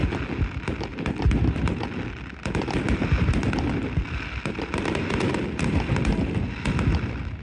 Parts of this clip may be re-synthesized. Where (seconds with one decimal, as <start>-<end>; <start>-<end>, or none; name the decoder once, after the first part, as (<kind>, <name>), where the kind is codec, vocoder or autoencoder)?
0.9-5.3 (vocoder, BigVGAN v2)